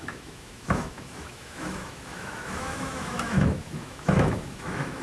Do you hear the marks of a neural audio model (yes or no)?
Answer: yes